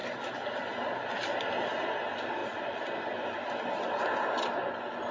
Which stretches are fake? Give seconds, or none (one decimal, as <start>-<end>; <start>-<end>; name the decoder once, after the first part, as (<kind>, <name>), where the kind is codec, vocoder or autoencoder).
none